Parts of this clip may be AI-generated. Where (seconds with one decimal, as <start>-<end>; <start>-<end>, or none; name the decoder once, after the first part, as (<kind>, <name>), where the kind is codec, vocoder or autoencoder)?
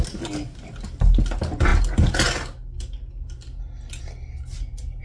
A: none